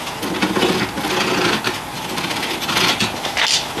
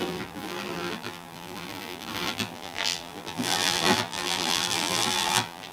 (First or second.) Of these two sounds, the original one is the first